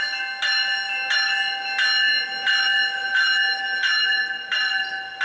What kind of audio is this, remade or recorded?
recorded